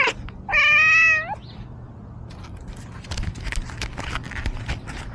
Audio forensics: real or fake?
real